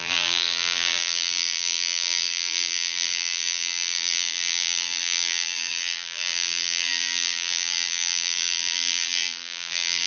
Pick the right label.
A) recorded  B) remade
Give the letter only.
B